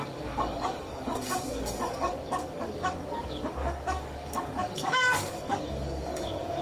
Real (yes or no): no